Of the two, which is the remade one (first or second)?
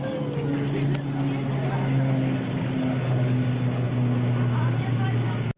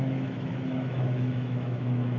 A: second